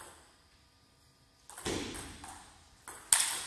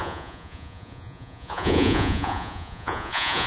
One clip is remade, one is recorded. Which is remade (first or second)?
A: second